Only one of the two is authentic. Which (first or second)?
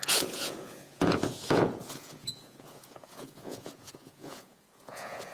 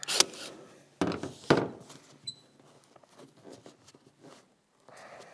second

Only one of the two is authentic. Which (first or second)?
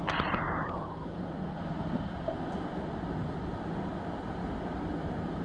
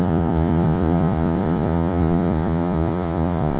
first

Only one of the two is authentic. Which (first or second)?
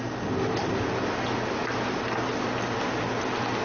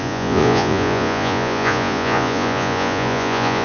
first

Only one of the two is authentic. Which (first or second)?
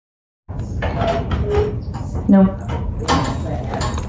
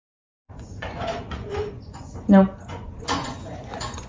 first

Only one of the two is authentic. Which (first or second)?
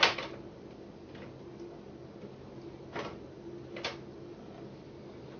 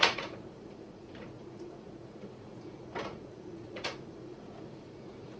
first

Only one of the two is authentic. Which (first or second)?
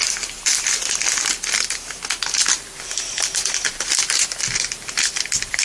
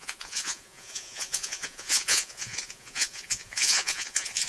first